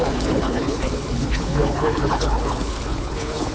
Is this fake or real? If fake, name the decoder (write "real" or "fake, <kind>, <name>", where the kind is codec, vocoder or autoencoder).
fake, codec, HILCodec